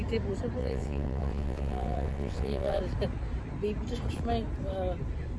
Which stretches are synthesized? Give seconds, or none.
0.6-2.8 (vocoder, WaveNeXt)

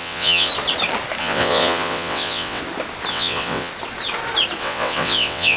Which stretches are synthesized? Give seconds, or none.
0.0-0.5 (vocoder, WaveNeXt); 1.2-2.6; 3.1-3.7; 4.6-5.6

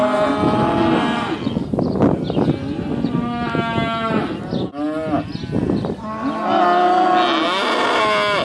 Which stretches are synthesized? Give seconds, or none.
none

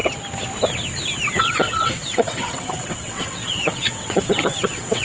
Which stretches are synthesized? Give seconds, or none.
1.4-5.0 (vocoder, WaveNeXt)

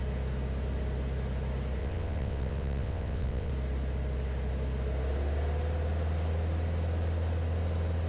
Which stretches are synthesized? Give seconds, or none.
1.8-3.5 (vocoder, WaveNeXt)